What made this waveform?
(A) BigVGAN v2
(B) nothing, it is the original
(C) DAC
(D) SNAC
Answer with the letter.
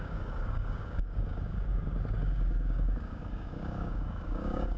C